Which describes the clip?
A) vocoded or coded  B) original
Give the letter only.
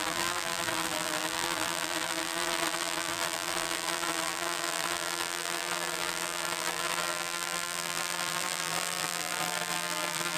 A